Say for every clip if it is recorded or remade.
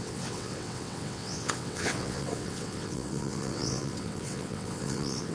remade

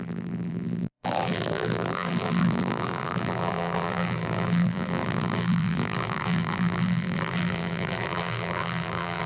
remade